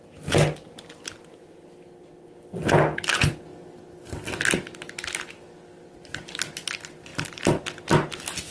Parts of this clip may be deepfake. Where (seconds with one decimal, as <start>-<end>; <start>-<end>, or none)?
7.1-7.7